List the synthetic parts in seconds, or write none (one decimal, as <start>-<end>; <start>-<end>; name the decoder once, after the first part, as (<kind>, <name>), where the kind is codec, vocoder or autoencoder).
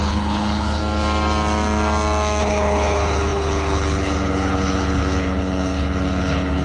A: 0.0-0.8 (codec, HILCodec); 2.4-6.6